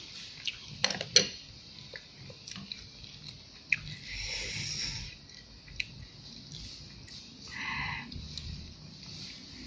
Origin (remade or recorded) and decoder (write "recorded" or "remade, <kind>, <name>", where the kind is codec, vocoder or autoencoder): recorded